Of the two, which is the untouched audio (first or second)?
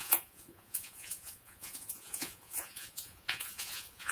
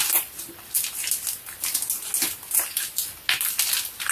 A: second